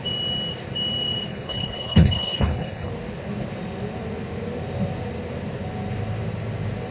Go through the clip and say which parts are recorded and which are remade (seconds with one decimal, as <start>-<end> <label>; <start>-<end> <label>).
0.0-1.3 recorded; 1.3-2.9 remade; 2.9-6.9 recorded